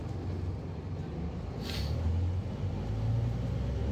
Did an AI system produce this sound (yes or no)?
no